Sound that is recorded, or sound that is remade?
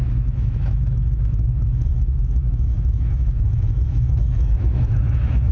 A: remade